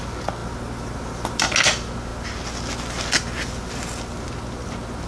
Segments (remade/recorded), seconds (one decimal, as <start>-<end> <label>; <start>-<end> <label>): 0.0-5.1 recorded